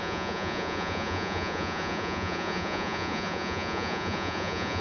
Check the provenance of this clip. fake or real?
fake